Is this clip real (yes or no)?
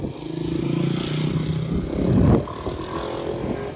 yes